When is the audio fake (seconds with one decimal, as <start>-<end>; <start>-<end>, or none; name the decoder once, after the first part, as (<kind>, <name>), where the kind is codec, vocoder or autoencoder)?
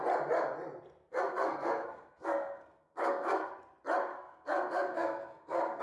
1.1-3.5 (codec, SNAC); 4.1-5.8